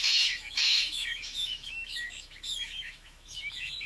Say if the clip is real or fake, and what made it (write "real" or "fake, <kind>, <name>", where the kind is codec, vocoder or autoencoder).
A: fake, autoencoder, DAC-VAE